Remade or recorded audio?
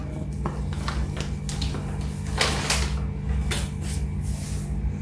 recorded